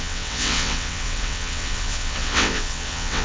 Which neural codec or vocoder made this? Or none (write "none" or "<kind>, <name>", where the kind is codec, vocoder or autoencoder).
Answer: vocoder, WaveNeXt